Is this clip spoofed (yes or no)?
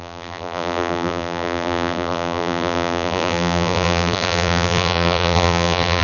yes